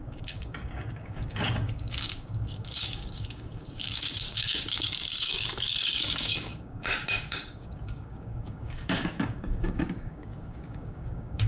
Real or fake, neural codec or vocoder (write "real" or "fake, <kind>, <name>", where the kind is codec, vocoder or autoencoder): fake, codec, DAC